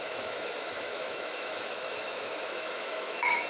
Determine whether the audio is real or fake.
fake